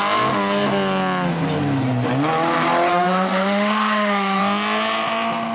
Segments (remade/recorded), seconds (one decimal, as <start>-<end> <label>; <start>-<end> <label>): 0.0-2.9 recorded; 2.9-4.4 remade; 4.4-5.5 recorded